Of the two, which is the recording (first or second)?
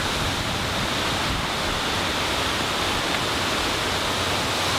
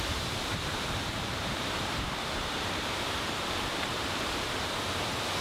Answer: first